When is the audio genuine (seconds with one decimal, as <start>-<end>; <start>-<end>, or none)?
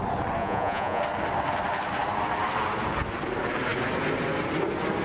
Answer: 0.0-0.4; 1.0-5.0